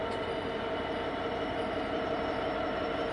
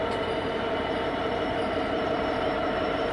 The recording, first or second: first